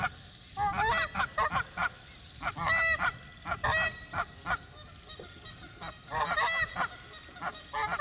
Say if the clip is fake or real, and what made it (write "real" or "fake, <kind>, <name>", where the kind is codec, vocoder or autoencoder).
real